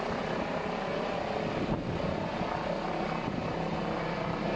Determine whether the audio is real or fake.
real